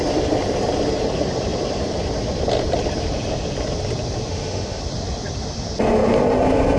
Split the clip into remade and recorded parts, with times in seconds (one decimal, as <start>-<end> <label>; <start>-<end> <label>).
0.0-4.3 recorded; 4.3-4.8 remade; 4.8-6.8 recorded